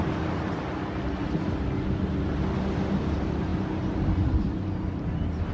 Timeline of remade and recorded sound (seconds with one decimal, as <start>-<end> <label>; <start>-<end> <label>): 0.0-5.5 recorded